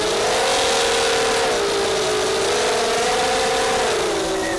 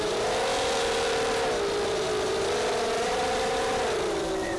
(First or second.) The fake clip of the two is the second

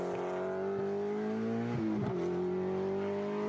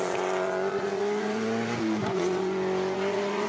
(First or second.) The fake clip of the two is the second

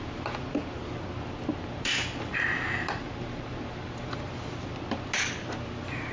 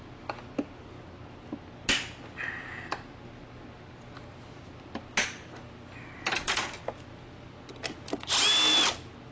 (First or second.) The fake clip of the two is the first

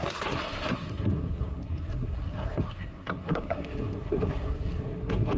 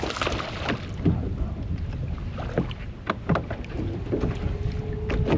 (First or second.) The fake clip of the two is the first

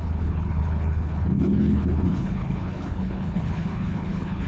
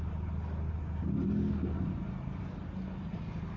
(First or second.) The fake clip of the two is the first